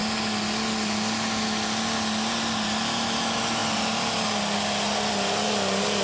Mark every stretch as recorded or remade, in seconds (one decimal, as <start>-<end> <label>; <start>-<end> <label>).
0.0-6.0 recorded